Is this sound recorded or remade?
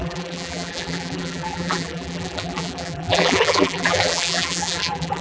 remade